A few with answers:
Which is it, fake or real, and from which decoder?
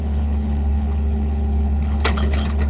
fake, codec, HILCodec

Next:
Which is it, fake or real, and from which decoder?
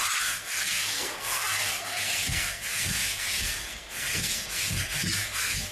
fake, codec, SNAC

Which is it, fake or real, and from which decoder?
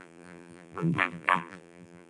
fake, vocoder, BigVGAN v2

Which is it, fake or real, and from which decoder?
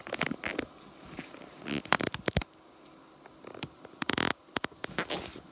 real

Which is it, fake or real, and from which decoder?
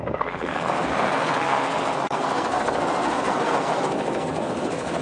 fake, codec, SNAC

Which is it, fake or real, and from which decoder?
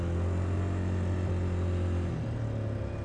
real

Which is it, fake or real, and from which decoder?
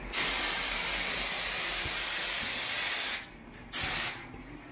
real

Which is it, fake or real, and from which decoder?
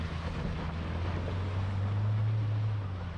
real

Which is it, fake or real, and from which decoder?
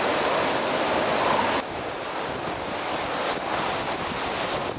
real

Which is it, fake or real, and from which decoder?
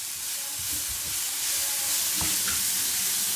real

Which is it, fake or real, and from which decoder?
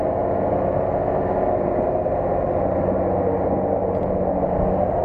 real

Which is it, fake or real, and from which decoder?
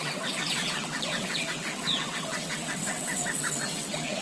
fake, vocoder, WaveNeXt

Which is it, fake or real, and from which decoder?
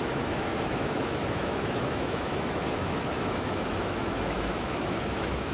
fake, autoencoder, DAC-VAE